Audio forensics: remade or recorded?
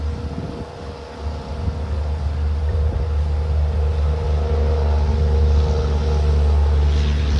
recorded